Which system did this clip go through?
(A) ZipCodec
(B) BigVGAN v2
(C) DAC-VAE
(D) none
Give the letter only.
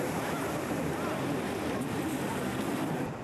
B